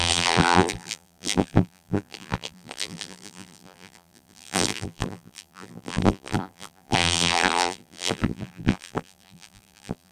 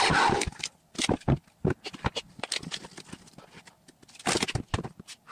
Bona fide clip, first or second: second